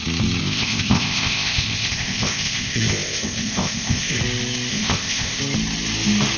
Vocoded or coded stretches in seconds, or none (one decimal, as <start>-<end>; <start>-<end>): 0.4-4.2; 4.7-5.4